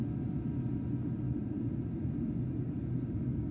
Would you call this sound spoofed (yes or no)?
no